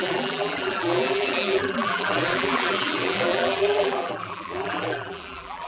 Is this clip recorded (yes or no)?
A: no